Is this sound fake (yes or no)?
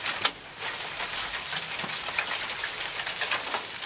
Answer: no